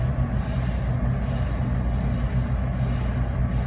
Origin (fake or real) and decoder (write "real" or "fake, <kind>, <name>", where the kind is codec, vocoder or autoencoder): real